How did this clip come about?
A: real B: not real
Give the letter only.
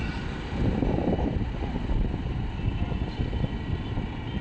A